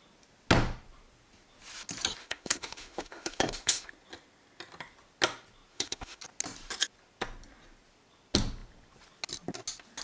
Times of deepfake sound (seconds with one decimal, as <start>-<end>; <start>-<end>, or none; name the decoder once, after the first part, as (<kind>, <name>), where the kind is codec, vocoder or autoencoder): 2.2-3.9 (autoencoder, DAC-VAE); 5.7-6.2